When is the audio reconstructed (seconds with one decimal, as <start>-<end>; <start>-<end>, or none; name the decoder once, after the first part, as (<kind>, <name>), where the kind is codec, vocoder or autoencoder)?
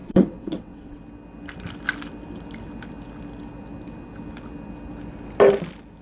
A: 0.0-1.0 (vocoder, WaveNeXt)